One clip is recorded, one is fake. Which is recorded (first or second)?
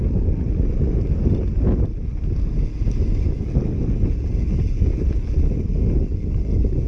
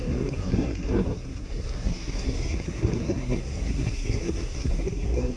first